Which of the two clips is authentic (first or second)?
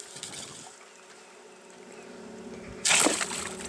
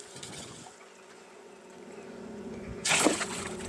first